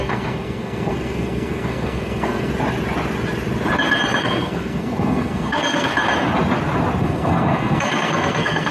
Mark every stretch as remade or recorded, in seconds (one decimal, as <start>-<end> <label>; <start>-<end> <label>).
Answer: 0.0-2.5 remade; 2.5-4.2 recorded; 4.2-5.9 remade; 5.9-7.0 recorded; 7.0-8.7 remade